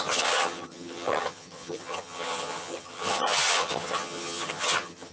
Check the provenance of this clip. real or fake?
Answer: fake